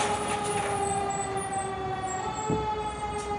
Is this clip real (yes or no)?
yes